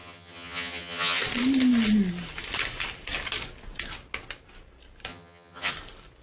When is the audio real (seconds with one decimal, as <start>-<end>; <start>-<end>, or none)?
1.2-5.1; 5.7-6.2